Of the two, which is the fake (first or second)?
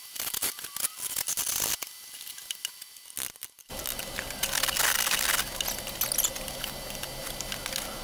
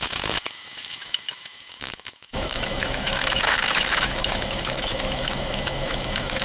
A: second